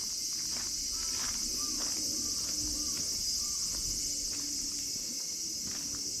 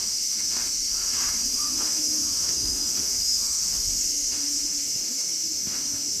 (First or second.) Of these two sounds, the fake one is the second